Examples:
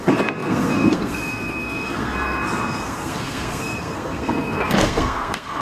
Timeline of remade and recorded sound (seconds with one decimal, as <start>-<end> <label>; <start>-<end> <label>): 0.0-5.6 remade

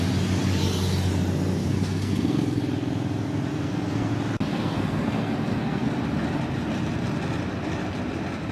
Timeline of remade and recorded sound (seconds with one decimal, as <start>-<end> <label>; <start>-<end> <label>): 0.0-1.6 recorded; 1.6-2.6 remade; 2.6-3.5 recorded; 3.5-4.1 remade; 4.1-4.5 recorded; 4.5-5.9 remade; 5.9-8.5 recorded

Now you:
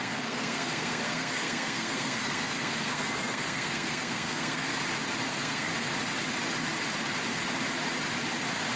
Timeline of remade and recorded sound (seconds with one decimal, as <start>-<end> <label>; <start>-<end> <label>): 0.0-4.7 remade; 4.7-5.3 recorded; 5.3-5.7 remade; 5.7-8.8 recorded

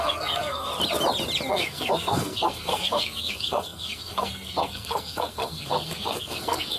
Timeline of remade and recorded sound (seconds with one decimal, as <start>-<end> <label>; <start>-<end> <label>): 0.0-0.7 remade; 0.7-1.5 recorded; 1.5-6.8 remade

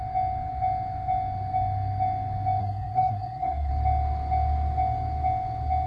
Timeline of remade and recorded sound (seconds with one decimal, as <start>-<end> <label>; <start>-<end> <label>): 0.0-2.6 recorded; 2.6-3.7 remade; 3.7-5.9 recorded